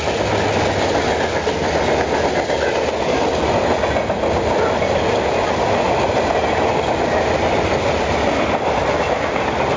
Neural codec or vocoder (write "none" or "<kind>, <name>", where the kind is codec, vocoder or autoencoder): none